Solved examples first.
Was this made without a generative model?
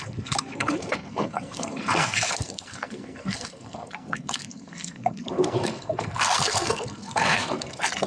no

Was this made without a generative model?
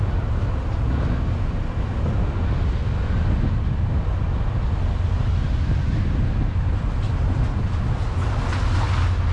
yes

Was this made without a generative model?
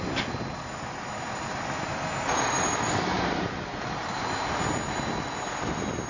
yes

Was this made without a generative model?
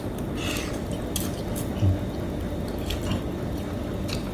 yes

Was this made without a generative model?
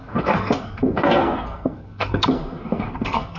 no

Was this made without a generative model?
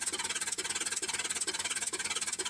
yes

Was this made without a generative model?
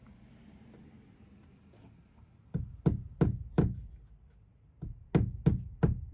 yes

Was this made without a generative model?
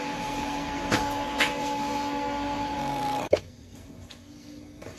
no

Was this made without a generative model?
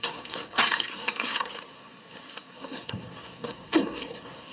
no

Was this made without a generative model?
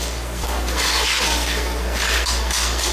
no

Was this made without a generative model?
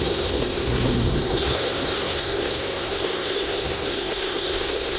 no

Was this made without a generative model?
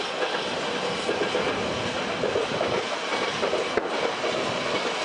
yes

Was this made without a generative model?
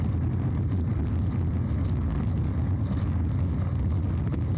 yes